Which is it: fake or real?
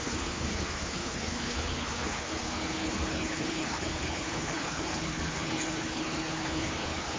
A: fake